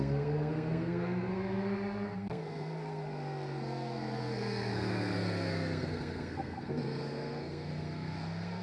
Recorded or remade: remade